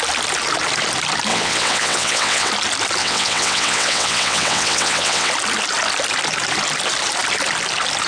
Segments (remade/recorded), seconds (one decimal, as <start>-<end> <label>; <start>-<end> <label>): 0.0-1.3 recorded; 1.3-2.5 remade; 2.5-3.0 recorded; 3.0-5.3 remade; 5.3-8.1 recorded